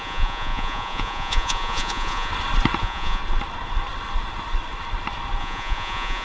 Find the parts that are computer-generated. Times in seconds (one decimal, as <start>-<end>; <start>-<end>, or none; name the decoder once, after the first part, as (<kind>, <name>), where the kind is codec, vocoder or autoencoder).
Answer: 0.0-2.3 (vocoder, Vocos); 2.8-3.2; 5.4-6.2